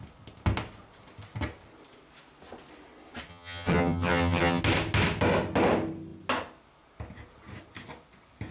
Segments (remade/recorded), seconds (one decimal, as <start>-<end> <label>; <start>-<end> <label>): 0.0-3.3 recorded; 3.3-4.6 remade; 4.6-8.5 recorded

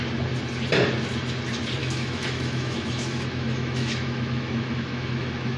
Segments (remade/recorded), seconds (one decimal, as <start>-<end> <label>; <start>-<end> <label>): 0.0-1.8 recorded; 1.8-5.6 remade